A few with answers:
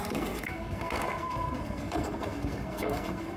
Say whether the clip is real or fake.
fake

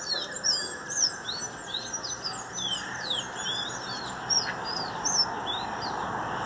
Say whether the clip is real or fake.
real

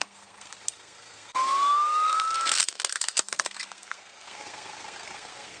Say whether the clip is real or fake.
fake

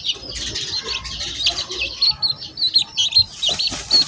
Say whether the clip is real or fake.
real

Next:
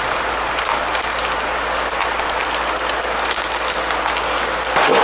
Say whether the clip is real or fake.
real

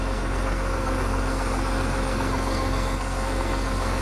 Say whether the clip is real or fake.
fake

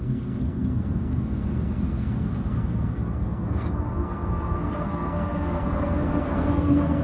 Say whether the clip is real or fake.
fake